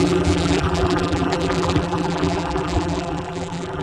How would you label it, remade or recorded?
remade